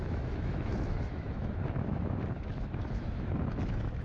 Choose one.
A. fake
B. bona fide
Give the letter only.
A